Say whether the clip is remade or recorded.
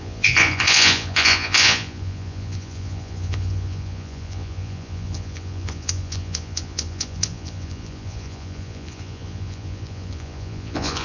remade